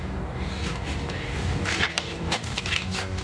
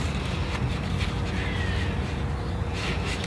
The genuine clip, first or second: second